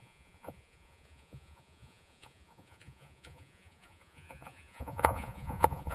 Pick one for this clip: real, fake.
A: fake